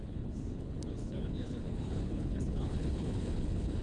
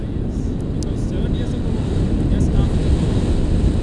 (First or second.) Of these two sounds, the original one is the second